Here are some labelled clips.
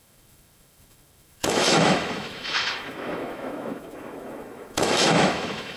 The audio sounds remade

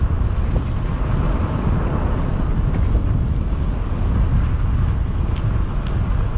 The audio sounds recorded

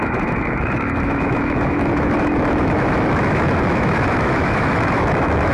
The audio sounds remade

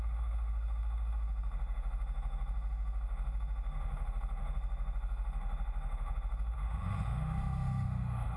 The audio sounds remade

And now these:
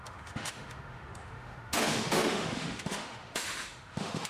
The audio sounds remade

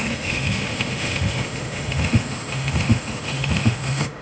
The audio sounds remade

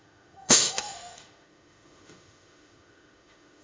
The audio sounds remade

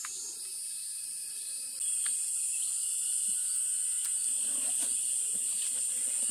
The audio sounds recorded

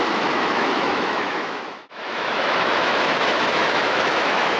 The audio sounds remade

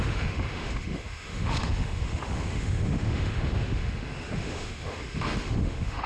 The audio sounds remade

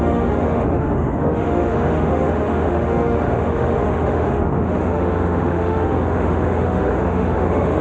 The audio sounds remade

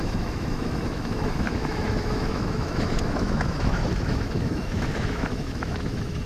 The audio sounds remade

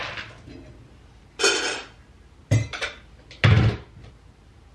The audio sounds recorded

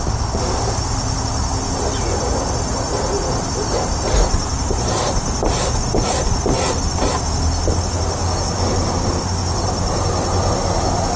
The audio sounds recorded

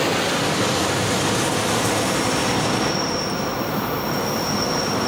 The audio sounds recorded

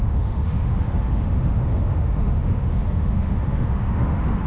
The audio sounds remade